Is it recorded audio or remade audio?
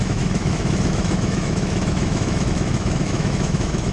remade